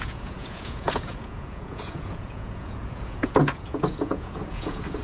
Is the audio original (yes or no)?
no